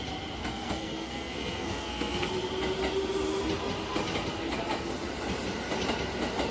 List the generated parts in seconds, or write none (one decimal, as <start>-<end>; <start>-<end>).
0.4-2.3